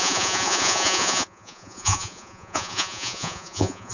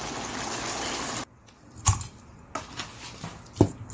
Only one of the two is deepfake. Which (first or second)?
first